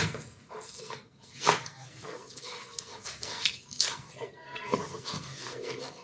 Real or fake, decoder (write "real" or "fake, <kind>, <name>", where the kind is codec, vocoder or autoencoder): fake, codec, SNAC